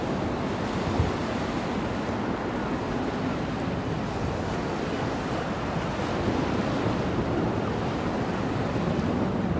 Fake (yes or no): no